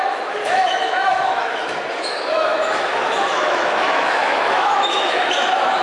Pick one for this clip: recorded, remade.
remade